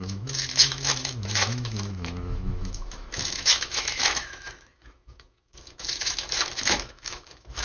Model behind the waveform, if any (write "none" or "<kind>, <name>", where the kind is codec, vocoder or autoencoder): autoencoder, DAC-VAE